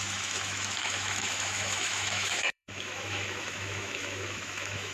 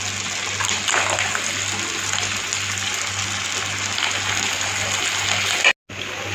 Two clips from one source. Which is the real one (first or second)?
second